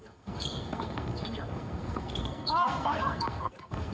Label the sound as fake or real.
fake